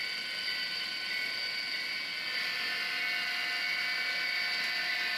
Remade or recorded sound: recorded